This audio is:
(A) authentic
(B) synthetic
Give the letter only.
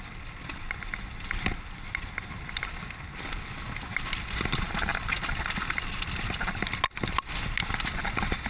A